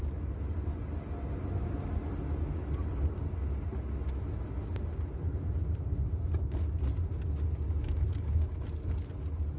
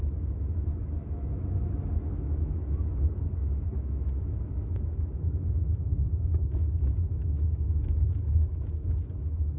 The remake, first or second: second